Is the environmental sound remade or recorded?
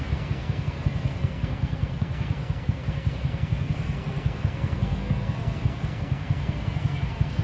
remade